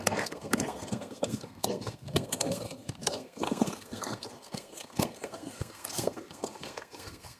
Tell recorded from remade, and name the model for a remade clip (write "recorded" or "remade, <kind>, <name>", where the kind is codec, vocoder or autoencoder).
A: remade, codec, SNAC